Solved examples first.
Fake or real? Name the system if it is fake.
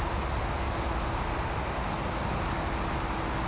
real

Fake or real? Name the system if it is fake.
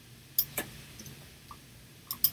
real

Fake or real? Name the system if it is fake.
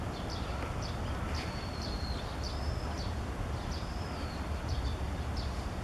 fake, vocoder, BigVGAN v2